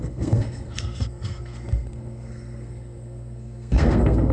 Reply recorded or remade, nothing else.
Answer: remade